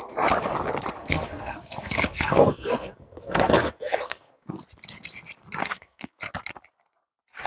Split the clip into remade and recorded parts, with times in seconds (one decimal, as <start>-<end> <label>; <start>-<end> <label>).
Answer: 0.0-1.0 recorded; 1.0-4.5 remade; 4.5-5.6 recorded; 5.6-6.2 remade; 6.2-7.5 recorded